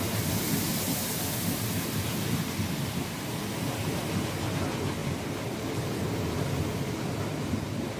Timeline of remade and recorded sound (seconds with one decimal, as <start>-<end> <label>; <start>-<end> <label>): 0.0-8.0 recorded